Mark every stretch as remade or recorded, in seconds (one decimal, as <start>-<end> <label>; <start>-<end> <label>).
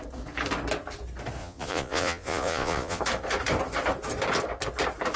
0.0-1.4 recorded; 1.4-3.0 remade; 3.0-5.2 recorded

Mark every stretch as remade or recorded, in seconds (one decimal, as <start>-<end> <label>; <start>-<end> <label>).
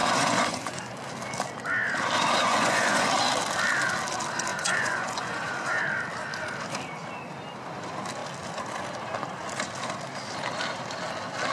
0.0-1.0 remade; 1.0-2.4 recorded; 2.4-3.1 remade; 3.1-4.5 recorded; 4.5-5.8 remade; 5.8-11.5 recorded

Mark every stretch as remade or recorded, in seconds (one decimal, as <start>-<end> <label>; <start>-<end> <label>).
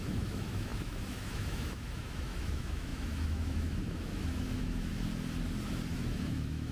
0.0-4.9 remade; 4.9-5.9 recorded; 5.9-6.7 remade